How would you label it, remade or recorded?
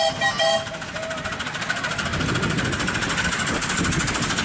recorded